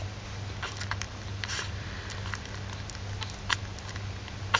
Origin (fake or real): real